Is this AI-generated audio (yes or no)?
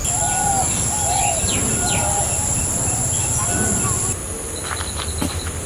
no